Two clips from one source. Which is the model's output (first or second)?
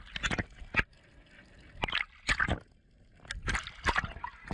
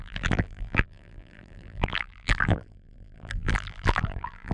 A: second